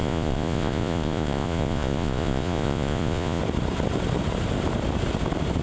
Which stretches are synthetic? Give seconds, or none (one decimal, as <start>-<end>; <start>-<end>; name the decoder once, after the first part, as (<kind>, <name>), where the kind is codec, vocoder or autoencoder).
0.0-3.4 (vocoder, Vocos)

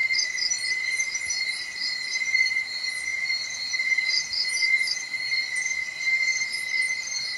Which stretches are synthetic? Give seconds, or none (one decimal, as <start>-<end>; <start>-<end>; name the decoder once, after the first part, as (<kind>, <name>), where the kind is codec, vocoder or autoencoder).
0.7-7.4 (vocoder, BigVGAN v2)

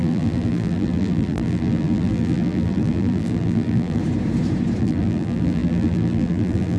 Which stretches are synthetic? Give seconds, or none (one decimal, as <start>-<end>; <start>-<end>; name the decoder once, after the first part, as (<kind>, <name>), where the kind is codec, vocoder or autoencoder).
0.0-4.0 (vocoder, BigVGAN v2); 4.8-6.8

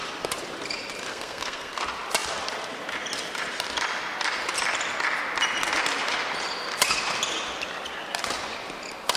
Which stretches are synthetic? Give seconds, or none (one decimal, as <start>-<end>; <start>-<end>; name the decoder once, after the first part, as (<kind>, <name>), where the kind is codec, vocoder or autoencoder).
1.1-1.7 (codec, SNAC)